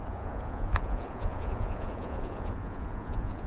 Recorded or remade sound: remade